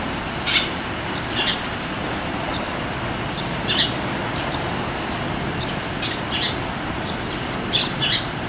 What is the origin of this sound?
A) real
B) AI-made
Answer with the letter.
B